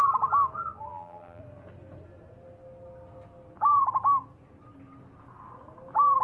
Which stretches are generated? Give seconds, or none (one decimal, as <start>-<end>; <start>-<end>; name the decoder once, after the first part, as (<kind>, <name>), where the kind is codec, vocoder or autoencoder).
0.9-1.4 (vocoder, BigVGAN v2)